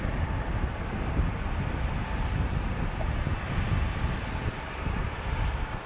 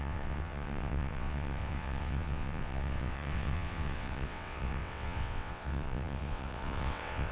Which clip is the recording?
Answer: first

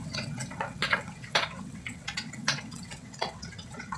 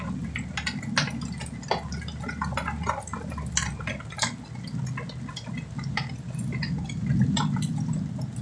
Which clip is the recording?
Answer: second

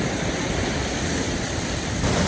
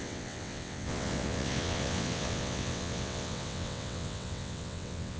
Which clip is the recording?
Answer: first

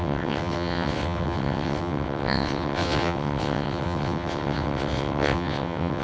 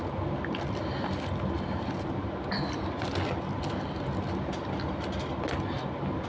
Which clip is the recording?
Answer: second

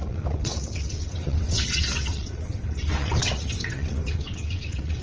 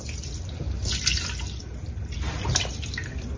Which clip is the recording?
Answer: second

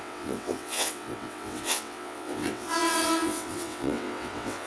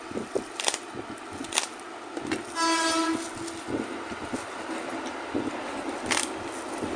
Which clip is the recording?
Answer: second